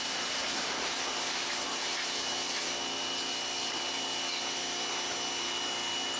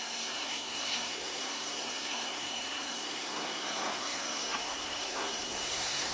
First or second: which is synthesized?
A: second